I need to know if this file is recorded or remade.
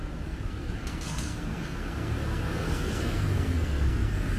remade